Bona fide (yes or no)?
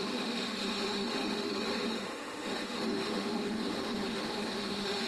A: no